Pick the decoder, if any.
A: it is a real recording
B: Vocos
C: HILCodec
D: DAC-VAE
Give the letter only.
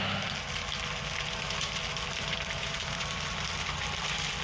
A